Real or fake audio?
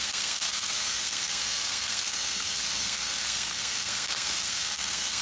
fake